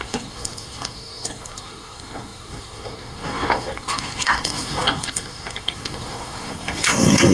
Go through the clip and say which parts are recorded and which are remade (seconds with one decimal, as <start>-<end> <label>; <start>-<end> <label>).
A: 0.0-7.3 remade

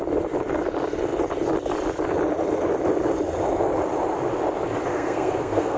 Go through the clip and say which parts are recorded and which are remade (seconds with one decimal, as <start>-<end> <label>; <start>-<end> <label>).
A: 0.0-4.9 recorded; 4.9-5.8 remade

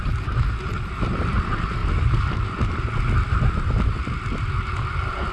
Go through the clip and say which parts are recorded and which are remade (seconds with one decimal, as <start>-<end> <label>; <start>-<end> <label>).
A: 0.0-5.3 recorded

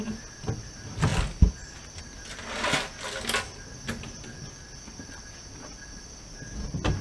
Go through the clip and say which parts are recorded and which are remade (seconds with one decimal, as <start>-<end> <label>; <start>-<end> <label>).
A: 0.0-7.0 recorded